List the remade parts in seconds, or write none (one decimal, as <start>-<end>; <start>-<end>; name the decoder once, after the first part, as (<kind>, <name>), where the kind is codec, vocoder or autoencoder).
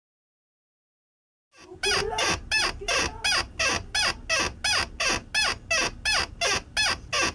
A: none